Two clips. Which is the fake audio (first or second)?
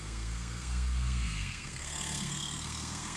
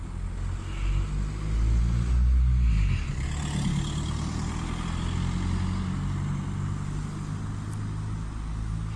first